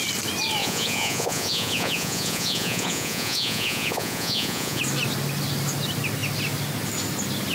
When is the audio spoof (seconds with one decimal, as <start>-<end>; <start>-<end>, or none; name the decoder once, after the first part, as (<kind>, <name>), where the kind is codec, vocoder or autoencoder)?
0.6-4.8 (vocoder, Vocos)